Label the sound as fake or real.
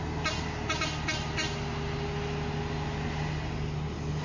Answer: real